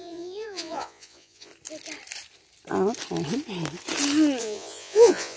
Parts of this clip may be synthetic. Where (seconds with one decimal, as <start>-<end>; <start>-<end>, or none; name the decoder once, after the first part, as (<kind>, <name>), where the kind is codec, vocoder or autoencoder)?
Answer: 0.0-1.5 (vocoder, Vocos); 4.4-5.4